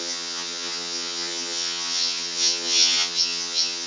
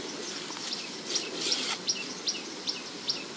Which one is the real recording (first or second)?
second